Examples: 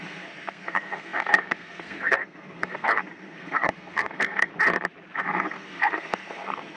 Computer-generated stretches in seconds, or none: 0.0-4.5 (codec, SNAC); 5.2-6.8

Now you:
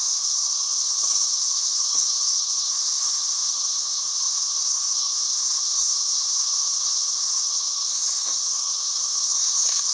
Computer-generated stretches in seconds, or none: 0.0-9.9 (codec, SNAC)

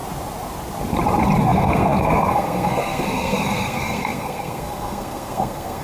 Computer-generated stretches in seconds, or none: 1.4-5.8 (codec, SNAC)